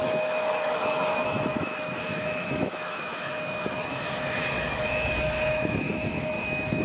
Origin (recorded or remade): remade